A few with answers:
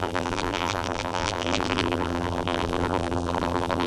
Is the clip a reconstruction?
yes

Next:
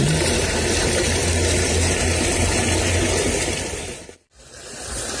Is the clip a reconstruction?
no